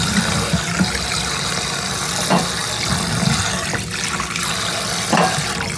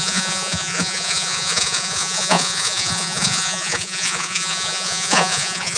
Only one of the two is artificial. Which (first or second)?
second